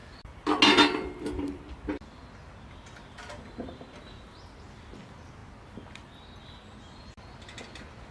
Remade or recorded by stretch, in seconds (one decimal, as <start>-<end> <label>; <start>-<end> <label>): 0.0-8.1 recorded